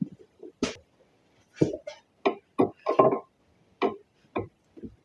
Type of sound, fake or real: real